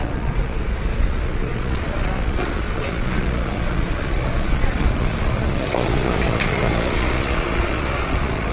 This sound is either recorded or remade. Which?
remade